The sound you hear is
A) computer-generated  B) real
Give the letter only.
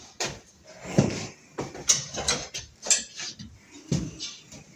B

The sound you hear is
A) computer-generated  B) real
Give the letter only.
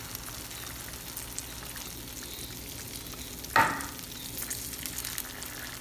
B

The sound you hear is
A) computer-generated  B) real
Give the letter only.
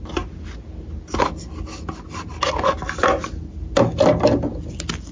B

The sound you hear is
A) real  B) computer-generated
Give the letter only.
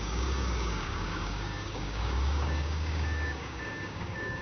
B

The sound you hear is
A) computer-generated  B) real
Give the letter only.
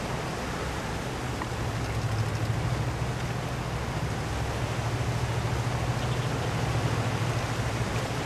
B